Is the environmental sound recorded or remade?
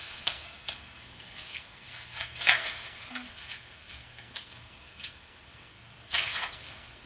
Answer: remade